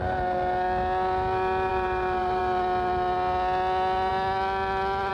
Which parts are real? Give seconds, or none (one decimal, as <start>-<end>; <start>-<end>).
0.0-1.7; 2.4-5.1